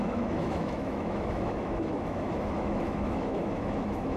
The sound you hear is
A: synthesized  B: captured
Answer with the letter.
A